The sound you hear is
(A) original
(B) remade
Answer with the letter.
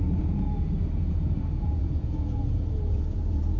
B